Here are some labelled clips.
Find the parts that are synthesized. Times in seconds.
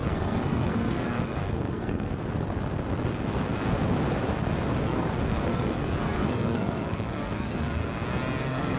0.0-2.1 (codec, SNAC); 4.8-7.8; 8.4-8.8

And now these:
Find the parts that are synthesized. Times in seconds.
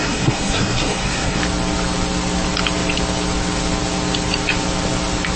0.0-1.4 (codec, SNAC)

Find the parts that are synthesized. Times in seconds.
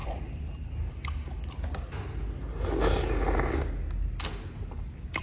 none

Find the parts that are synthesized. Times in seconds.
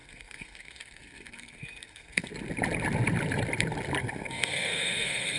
0.0-2.3 (codec, SNAC); 4.0-5.4